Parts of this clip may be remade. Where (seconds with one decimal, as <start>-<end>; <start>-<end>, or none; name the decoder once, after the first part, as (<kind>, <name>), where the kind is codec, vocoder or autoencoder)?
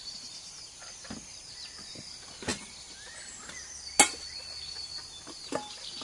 0.0-0.8 (vocoder, BigVGAN v2)